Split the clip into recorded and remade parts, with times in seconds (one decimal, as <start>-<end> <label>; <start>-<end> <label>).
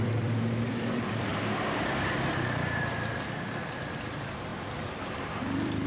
0.0-1.3 remade; 1.3-3.5 recorded; 3.5-5.9 remade